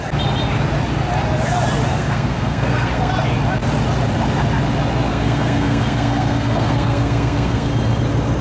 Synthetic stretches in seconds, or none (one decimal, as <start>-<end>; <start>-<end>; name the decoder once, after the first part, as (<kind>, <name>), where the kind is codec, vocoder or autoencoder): 1.9-3.1 (codec, SNAC); 5.1-7.7